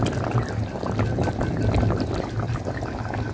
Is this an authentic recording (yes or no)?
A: yes